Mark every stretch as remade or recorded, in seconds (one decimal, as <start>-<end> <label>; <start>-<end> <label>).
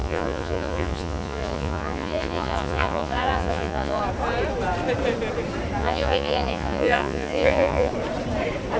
0.0-4.0 remade; 4.0-5.8 recorded; 5.8-7.9 remade; 7.9-8.8 recorded